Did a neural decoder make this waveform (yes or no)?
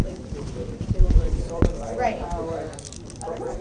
no